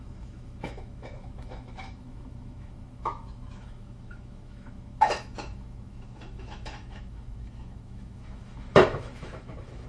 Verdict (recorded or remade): remade